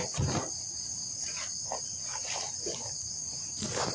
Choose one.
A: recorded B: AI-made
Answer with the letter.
A